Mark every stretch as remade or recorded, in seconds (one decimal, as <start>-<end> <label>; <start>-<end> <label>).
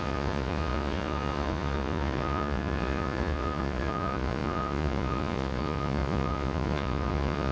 0.0-7.5 remade